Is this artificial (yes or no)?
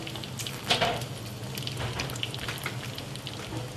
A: no